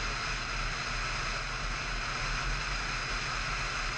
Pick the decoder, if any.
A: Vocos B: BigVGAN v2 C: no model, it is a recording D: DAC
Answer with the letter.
C